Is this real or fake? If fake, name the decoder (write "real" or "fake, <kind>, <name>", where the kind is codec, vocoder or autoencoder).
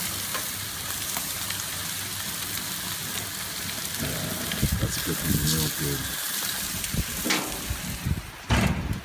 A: real